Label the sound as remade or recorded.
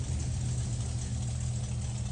recorded